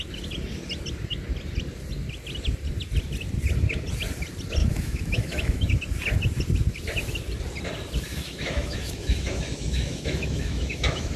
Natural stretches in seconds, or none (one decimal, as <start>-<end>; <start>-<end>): 0.0-4.6; 5.8-8.1